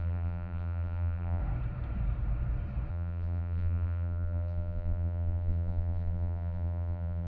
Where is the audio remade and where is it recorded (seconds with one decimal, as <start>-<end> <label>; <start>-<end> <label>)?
0.0-1.4 remade; 1.4-2.9 recorded; 2.9-7.3 remade